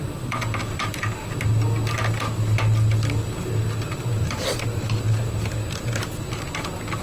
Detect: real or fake real